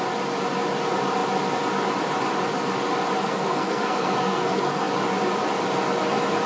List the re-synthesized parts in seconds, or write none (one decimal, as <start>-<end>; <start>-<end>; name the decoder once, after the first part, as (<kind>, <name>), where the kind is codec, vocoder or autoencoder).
3.2-4.9 (codec, SNAC)